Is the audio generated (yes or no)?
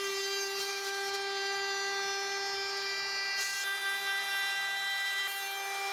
no